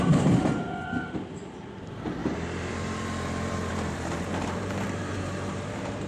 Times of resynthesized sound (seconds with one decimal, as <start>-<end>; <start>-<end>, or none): 0.0-6.1